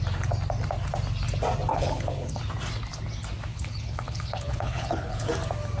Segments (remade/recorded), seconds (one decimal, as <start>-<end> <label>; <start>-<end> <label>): 0.0-1.7 recorded; 1.7-2.4 remade; 2.4-3.5 recorded; 3.5-5.3 remade; 5.3-5.8 recorded